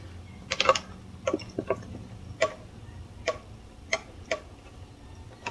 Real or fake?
real